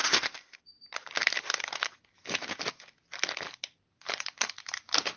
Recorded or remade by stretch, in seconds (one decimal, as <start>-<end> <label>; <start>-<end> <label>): 0.0-0.6 remade; 0.6-5.2 recorded